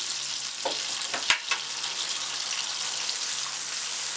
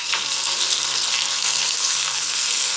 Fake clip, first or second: second